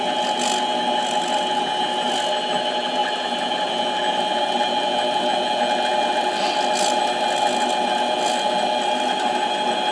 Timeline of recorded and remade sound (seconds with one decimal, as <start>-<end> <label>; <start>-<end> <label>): 0.0-9.9 recorded